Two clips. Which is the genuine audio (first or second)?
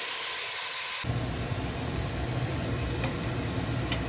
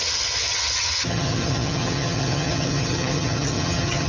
first